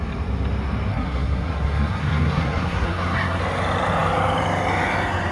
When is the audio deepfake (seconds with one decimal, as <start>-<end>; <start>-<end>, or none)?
0.9-3.4